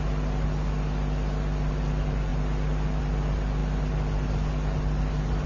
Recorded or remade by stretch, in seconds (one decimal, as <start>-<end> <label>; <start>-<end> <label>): 0.0-5.5 recorded